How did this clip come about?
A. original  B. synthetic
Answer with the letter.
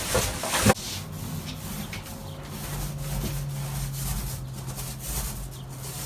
A